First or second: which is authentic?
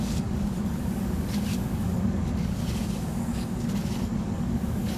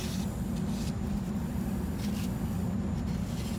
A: second